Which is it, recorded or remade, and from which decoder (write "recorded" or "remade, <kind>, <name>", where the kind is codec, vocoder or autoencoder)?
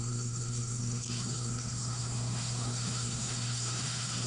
remade, codec, SNAC